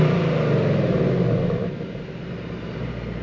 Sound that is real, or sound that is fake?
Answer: real